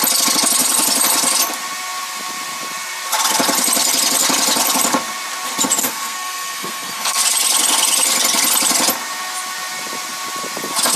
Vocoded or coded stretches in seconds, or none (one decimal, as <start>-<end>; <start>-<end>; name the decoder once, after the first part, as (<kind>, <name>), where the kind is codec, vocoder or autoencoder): 5.8-7.2 (codec, SNAC)